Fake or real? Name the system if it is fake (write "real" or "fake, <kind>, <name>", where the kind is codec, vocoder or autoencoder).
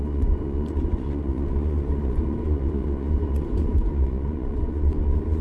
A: fake, vocoder, Vocos